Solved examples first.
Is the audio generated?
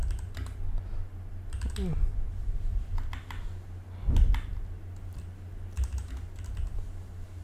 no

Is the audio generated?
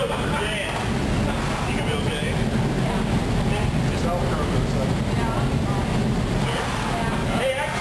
no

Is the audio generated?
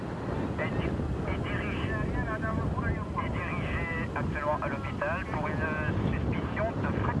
no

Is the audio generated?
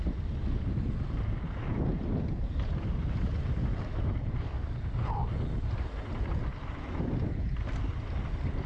no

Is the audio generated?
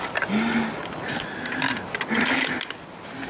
no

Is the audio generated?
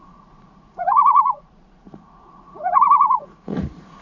yes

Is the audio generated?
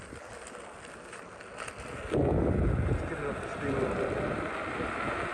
no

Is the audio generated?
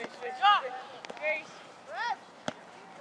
no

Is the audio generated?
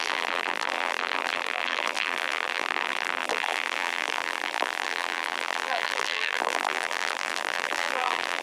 yes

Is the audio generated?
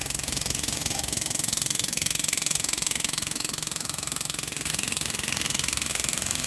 yes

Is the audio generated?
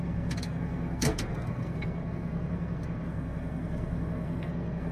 yes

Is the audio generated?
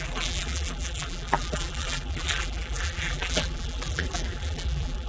yes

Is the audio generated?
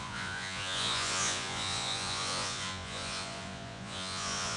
yes